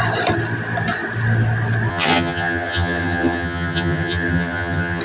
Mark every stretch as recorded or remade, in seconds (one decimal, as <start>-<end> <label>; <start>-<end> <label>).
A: 0.0-1.9 recorded; 1.9-5.0 remade